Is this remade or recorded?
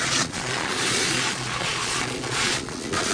remade